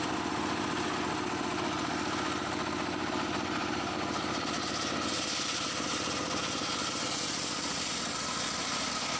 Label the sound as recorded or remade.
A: recorded